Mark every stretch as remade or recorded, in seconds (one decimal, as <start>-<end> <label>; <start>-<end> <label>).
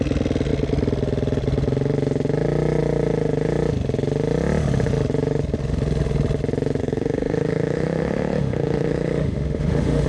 0.0-6.8 recorded; 6.8-10.1 remade